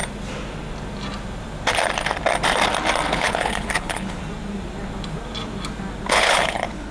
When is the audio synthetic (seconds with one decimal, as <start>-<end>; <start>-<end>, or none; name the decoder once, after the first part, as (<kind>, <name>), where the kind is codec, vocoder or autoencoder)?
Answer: 3.1-4.2 (codec, HILCodec); 6.1-6.9